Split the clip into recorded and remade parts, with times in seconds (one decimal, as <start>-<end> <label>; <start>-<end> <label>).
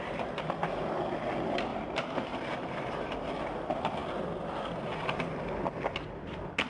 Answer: 0.0-1.7 recorded; 1.7-3.3 remade; 3.3-6.7 recorded